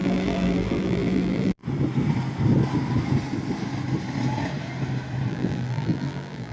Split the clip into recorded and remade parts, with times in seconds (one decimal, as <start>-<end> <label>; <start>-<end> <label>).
0.0-1.6 remade; 1.6-5.3 recorded; 5.3-6.5 remade